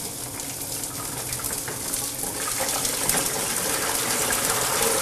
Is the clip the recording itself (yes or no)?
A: yes